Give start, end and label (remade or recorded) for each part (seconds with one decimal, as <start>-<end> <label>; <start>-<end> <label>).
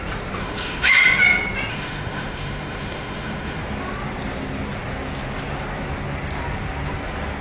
0.0-0.4 recorded; 0.4-1.0 remade; 1.0-1.7 recorded; 1.7-3.6 remade; 3.6-7.4 recorded